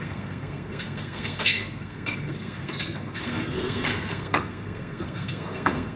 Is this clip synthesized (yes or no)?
yes